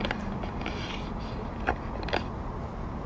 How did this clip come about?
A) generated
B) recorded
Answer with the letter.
B